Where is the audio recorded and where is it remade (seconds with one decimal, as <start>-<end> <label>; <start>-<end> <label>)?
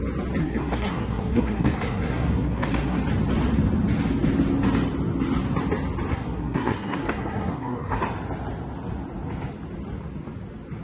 0.0-0.4 recorded; 0.4-3.0 remade; 3.0-6.1 recorded; 6.1-8.0 remade; 8.0-10.8 recorded